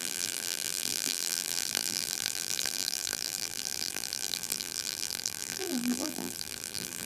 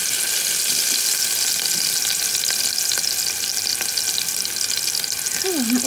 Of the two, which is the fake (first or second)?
first